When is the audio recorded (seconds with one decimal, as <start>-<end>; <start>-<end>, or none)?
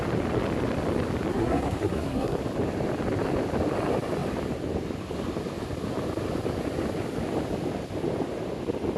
0.0-1.3; 2.4-9.0